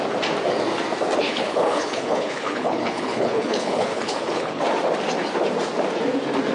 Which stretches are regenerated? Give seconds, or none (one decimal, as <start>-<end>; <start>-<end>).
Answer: 1.2-4.6